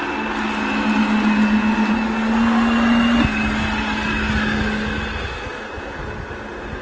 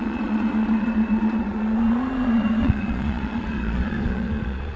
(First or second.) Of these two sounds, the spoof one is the second